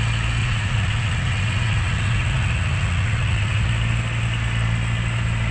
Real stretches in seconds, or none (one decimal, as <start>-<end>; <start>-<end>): 0.0-0.4; 3.7-5.5